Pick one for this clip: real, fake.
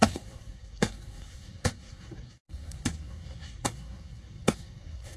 fake